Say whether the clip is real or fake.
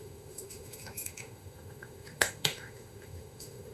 fake